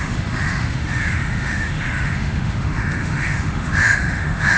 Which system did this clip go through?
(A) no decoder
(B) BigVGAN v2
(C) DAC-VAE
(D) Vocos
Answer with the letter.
C